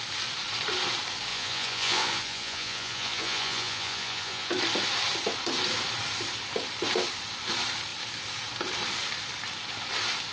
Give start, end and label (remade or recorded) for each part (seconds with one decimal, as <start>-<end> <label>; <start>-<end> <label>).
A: 0.0-1.3 recorded; 1.3-4.5 remade; 4.5-10.3 recorded

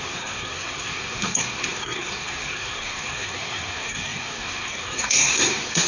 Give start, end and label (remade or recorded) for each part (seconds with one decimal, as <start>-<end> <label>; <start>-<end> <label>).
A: 0.0-5.9 remade

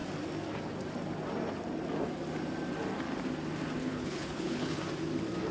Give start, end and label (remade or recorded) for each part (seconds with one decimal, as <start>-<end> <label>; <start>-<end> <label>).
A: 0.0-3.8 recorded; 3.8-4.8 remade; 4.8-5.5 recorded

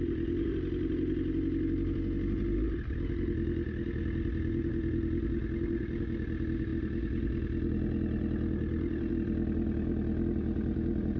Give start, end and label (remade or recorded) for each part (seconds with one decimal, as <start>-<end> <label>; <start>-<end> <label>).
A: 0.0-11.2 recorded